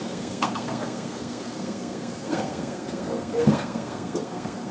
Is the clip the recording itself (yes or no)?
no